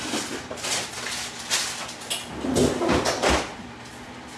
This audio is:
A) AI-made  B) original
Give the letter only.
B